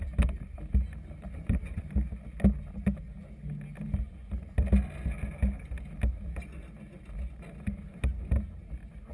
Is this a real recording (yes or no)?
yes